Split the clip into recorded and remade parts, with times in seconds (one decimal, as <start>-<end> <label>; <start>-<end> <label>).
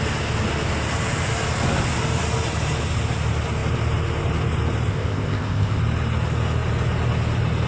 0.0-4.9 recorded; 4.9-5.8 remade; 5.8-7.7 recorded